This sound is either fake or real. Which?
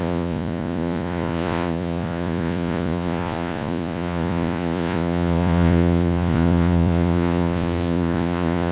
fake